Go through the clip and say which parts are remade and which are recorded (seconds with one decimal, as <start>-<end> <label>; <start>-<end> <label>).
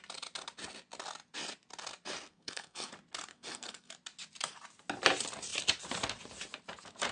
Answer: 0.0-2.3 recorded; 2.3-2.9 remade; 2.9-3.3 recorded; 3.3-3.9 remade; 3.9-7.1 recorded